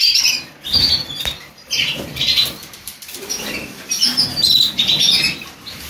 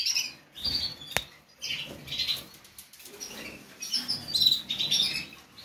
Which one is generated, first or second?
first